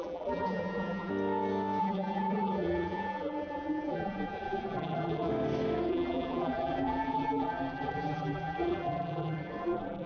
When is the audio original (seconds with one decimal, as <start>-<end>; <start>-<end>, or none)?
1.1-1.8; 5.3-5.9